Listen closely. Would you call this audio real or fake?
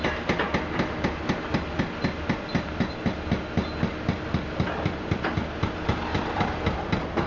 real